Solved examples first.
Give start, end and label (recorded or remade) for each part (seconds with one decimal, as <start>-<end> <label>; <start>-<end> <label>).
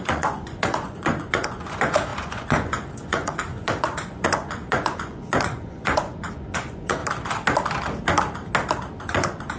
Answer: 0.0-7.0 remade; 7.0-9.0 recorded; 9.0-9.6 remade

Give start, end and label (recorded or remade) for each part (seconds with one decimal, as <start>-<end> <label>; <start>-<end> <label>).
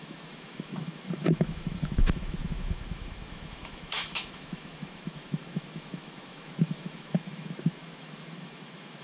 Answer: 0.0-9.0 remade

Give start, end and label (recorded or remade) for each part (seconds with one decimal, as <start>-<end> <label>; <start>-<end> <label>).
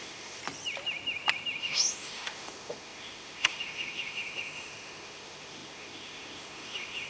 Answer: 0.0-0.4 remade; 0.4-1.6 recorded; 1.6-7.1 remade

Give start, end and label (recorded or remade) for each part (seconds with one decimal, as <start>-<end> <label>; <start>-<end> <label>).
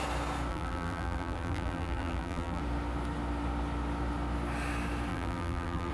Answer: 0.0-0.5 recorded; 0.5-2.6 remade; 2.6-5.1 recorded; 5.1-5.9 remade